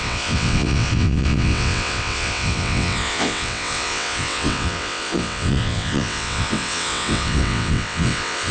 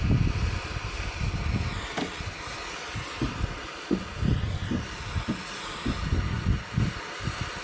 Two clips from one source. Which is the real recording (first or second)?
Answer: second